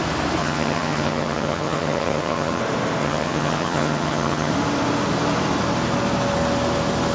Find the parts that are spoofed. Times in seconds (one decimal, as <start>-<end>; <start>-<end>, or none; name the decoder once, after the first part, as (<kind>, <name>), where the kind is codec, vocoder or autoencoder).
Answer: 0.4-2.6 (vocoder, HiFi-GAN); 3.0-4.5